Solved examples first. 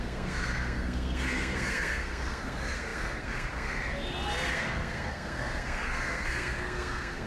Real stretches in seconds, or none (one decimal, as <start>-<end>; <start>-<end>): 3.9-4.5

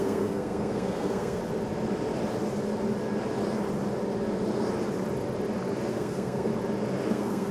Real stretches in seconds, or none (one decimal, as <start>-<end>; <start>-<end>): 1.4-5.9; 6.5-7.1

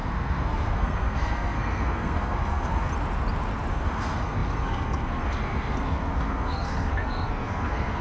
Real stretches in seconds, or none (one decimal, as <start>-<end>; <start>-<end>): 2.9-3.7

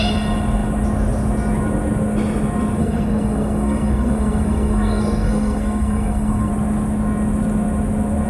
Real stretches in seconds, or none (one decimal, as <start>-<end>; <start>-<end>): 0.0-2.8; 6.5-8.3

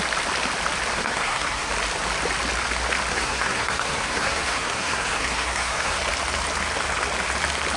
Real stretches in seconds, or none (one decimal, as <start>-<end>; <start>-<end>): 0.0-1.0; 1.7-3.1; 6.0-7.8

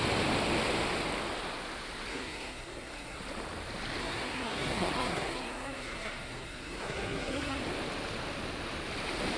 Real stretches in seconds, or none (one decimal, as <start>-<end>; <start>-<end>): 0.0-2.1; 3.2-4.0; 7.6-9.4

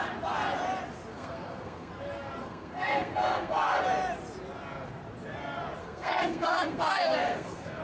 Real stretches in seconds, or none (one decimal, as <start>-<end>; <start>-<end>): 0.0-1.1; 1.9-2.4; 3.8-5.8

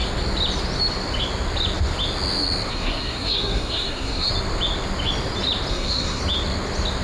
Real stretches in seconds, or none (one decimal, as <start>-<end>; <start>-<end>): 0.0-2.7; 4.3-5.7; 6.2-7.0